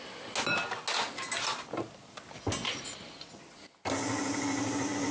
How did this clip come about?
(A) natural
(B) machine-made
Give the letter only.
A